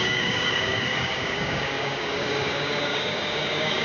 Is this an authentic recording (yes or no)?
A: no